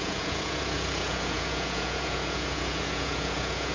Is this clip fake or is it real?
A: fake